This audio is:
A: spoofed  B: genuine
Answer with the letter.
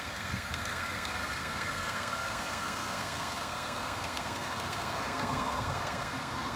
A